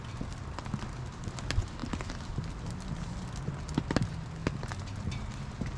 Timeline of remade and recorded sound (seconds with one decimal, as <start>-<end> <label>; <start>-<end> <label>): 0.0-4.4 recorded; 4.4-5.8 remade